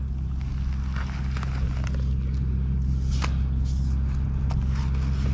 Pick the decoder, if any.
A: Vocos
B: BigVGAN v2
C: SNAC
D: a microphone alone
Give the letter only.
D